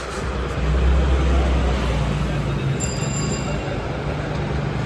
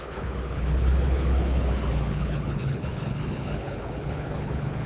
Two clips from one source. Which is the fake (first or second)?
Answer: second